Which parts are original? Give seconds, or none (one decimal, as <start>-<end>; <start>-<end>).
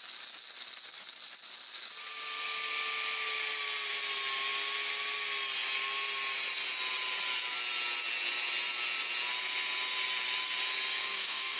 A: 0.0-11.0